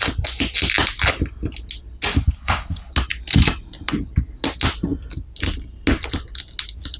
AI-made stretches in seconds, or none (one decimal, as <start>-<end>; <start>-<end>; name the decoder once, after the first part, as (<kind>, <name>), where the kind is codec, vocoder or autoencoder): 2.1-2.9 (codec, HILCodec)